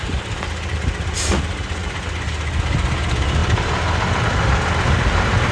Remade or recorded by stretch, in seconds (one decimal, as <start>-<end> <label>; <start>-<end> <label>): 0.0-5.5 recorded